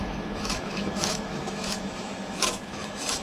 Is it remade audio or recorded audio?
remade